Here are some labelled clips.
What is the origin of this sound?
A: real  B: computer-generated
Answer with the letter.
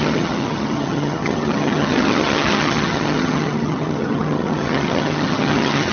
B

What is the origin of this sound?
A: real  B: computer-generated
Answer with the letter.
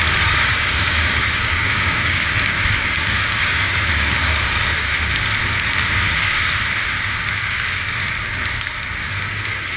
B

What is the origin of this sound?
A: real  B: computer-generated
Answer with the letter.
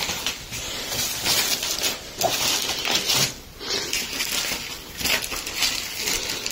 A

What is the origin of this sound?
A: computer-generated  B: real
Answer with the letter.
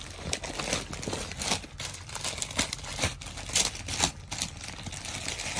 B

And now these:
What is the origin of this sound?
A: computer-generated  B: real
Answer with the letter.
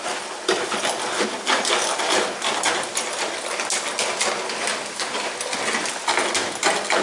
B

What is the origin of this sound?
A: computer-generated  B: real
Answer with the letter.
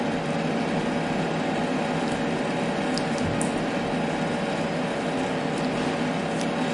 B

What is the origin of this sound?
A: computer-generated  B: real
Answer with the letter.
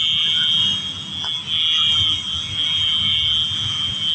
B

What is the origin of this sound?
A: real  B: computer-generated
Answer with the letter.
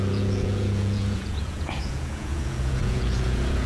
B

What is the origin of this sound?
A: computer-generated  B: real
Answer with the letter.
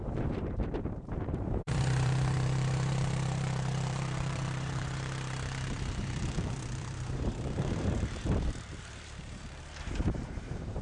A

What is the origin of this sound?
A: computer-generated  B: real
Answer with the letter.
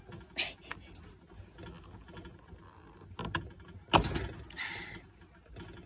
B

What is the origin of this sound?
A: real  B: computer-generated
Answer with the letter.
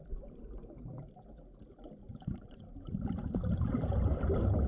B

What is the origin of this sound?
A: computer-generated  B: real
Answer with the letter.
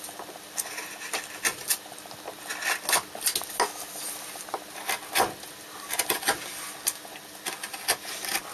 B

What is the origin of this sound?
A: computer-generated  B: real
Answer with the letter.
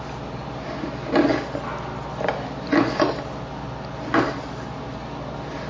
B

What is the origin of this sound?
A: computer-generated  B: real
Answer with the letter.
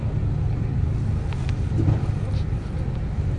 B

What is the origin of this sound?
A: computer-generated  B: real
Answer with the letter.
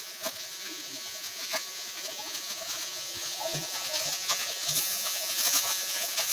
A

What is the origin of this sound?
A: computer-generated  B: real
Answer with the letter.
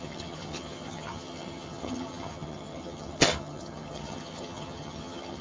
A